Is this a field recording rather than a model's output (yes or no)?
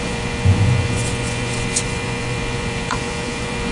no